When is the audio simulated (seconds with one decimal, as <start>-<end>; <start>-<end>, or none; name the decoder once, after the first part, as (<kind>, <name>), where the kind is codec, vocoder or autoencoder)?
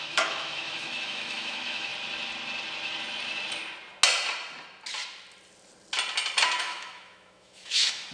0.0-1.9 (autoencoder, DAC-VAE); 6.6-8.1